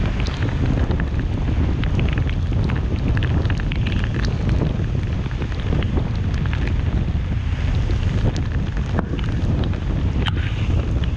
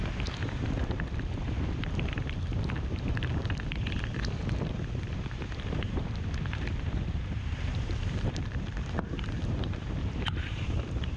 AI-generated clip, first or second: second